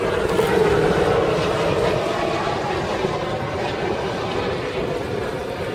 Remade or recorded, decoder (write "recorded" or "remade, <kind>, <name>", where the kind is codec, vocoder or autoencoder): recorded